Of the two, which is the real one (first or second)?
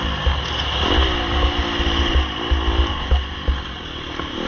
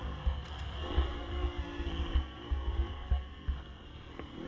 first